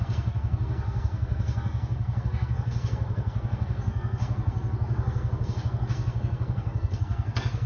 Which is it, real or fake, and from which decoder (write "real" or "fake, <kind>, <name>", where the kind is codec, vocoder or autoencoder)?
fake, codec, SNAC